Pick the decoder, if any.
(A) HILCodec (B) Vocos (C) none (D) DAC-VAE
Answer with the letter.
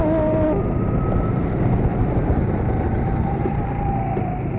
C